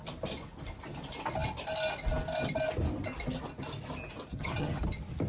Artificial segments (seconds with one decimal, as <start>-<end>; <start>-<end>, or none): 4.3-4.8